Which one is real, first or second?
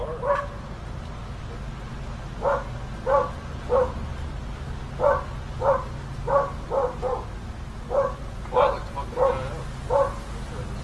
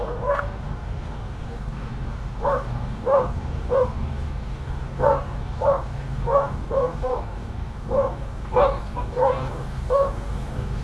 first